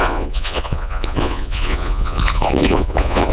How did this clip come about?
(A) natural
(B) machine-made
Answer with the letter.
B